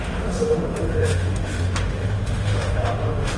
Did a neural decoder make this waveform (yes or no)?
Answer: yes